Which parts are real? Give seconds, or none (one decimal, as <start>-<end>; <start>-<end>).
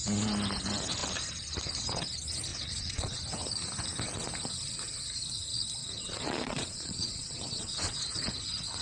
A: 0.0-2.5; 3.2-5.8; 8.3-8.8